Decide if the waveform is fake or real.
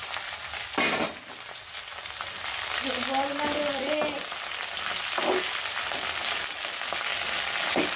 real